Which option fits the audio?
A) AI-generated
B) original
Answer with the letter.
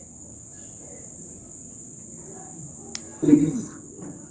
B